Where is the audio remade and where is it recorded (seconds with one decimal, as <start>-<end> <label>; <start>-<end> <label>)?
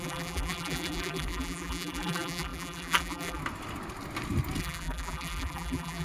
0.0-3.4 remade; 3.4-4.6 recorded; 4.6-6.0 remade